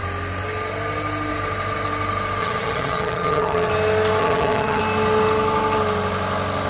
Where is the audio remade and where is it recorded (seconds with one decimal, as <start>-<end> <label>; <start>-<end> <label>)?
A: 0.0-2.4 recorded; 2.4-3.7 remade; 3.7-4.2 recorded; 4.2-4.8 remade; 4.8-6.7 recorded